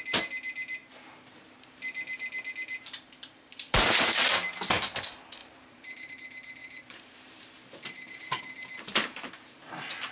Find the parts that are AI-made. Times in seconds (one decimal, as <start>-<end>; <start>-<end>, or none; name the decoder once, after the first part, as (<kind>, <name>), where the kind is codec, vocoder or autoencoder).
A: 5.4-6.1 (vocoder, BigVGAN v2); 6.6-8.4